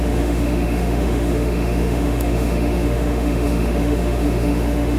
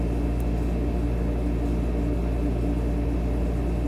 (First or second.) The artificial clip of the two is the first